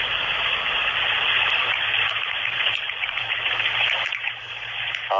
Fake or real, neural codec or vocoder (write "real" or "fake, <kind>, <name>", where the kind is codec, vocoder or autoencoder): fake, vocoder, BigVGAN v2